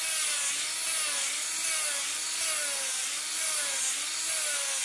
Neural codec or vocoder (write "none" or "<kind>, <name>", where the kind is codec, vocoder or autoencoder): none